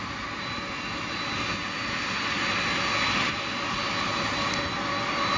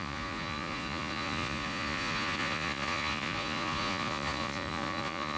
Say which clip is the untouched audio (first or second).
first